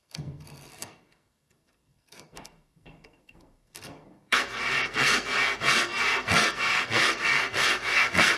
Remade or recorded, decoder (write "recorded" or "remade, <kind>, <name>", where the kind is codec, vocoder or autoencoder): remade, codec, SNAC